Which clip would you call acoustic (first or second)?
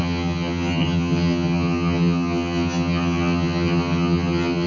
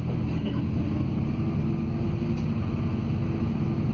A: second